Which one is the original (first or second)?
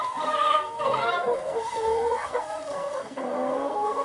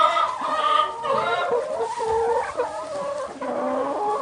second